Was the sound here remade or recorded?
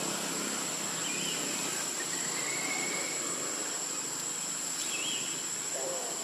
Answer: recorded